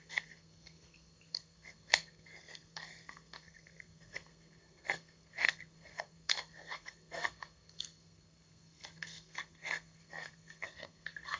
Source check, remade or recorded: remade